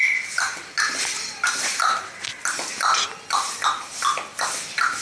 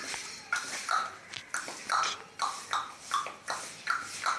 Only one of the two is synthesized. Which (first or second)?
second